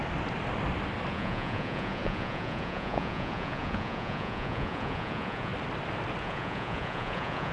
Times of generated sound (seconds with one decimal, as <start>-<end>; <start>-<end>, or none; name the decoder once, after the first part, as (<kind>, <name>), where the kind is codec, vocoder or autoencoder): 1.1-5.5 (vocoder, Vocos); 6.2-7.5